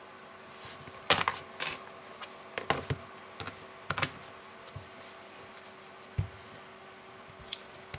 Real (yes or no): yes